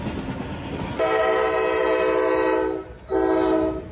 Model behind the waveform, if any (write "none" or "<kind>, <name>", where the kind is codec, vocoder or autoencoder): none